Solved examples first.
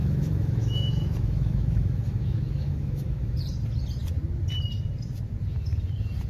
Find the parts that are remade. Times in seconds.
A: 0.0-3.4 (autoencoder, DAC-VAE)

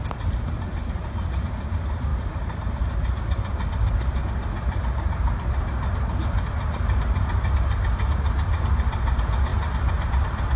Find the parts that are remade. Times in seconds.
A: none